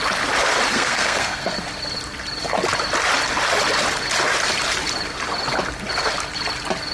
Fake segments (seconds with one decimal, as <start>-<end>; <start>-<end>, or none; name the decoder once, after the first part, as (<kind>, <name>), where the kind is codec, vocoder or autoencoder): 0.7-1.6 (codec, SNAC)